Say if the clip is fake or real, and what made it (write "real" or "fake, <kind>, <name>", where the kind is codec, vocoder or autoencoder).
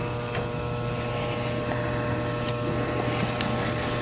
real